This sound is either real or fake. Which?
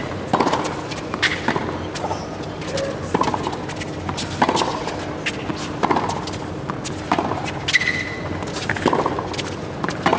real